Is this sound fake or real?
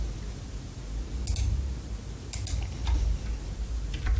real